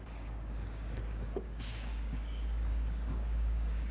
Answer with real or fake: fake